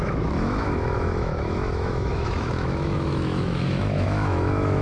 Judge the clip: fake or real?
fake